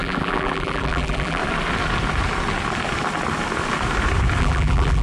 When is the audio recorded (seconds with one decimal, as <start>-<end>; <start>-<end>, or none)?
1.4-4.4